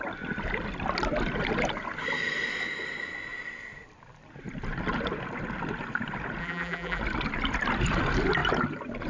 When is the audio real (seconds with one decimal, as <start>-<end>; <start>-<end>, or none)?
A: 0.0-6.4; 7.0-9.1